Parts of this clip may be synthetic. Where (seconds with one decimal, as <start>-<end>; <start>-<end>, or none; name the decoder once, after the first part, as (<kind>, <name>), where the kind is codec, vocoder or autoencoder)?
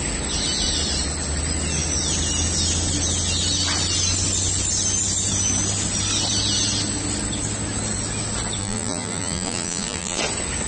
8.6-10.2 (vocoder, BigVGAN v2)